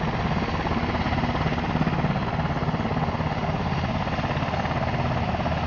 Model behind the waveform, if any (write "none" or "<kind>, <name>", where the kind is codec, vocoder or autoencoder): none